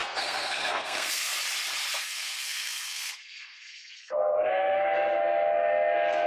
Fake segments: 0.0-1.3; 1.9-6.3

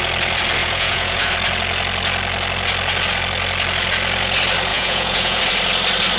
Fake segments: 0.6-1.3; 4.7-5.4